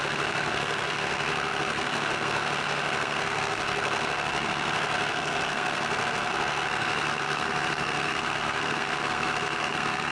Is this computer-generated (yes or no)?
yes